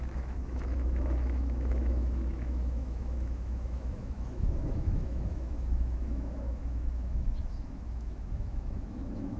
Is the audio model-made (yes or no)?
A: yes